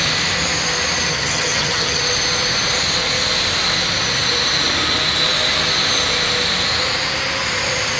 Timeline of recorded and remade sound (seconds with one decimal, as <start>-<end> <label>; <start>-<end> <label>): 0.0-1.1 recorded; 1.1-2.0 remade; 2.0-8.0 recorded